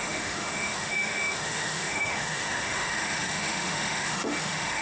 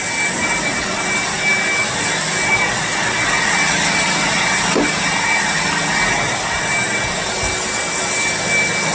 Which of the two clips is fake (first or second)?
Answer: first